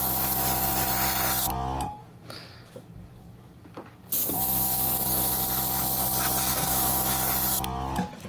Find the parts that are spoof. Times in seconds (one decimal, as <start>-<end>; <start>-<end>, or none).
2.0-5.3; 6.5-7.1